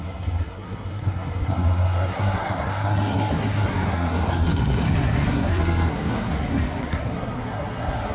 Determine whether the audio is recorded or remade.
remade